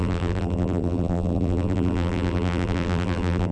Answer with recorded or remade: remade